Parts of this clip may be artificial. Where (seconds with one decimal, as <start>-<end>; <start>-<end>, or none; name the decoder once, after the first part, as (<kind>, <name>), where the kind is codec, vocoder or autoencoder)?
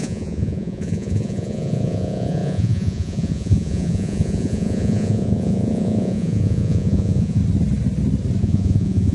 0.0-7.4 (vocoder, Vocos); 8.4-9.1